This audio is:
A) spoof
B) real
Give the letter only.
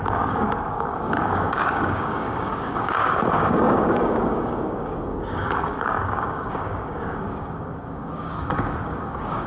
A